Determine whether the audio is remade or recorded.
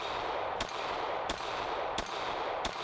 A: recorded